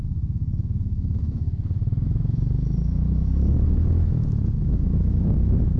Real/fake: fake